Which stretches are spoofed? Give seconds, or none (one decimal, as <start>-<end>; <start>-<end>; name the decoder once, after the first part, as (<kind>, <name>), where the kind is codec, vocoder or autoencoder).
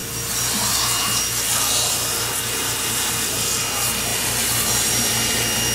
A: none